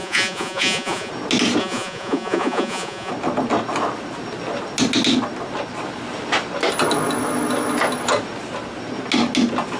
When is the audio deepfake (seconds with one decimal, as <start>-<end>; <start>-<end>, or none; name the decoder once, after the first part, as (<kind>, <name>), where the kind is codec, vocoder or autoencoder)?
0.0-1.1 (vocoder, Vocos); 1.6-3.1